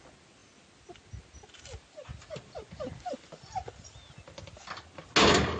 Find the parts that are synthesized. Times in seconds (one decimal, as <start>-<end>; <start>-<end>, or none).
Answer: none